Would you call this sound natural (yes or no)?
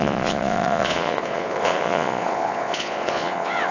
no